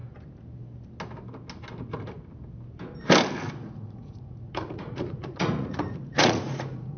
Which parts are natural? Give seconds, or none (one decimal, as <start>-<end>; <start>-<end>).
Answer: 0.0-3.5